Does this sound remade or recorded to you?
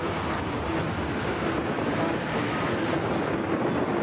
recorded